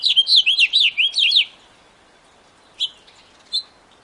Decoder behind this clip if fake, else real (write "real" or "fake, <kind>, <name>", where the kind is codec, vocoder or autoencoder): real